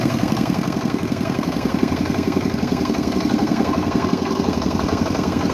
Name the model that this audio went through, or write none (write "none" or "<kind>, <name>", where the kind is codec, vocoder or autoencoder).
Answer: codec, SNAC